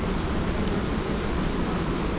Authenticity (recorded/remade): remade